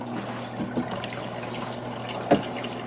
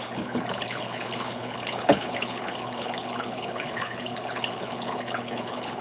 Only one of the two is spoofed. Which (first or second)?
second